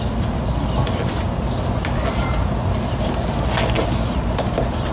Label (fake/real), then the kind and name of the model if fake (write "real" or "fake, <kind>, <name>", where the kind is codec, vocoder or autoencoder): real